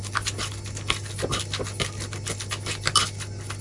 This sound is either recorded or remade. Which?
recorded